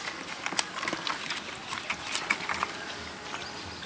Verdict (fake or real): real